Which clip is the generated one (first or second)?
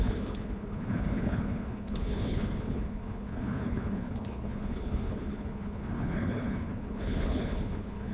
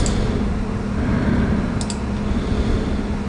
first